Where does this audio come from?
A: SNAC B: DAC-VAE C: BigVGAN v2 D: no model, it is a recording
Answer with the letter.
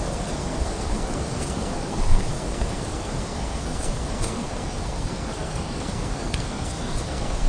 A